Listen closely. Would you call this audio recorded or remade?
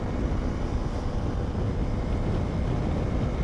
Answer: recorded